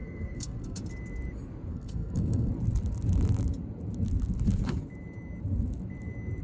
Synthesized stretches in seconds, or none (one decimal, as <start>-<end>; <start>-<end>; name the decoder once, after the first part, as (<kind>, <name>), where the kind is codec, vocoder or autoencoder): 0.0-0.8 (codec, SNAC); 1.7-2.5